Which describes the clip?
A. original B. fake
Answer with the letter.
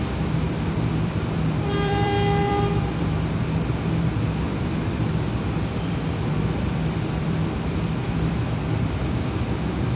B